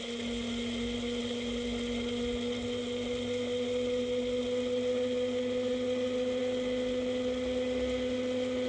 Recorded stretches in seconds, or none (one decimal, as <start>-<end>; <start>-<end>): 0.0-8.7